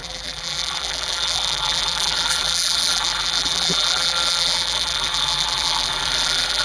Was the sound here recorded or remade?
remade